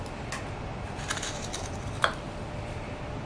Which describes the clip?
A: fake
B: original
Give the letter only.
B